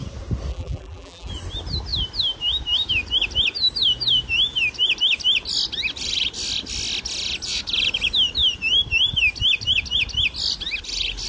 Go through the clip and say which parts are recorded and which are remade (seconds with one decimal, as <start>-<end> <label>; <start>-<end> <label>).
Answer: 0.0-0.5 recorded; 0.5-1.3 remade; 1.3-11.3 recorded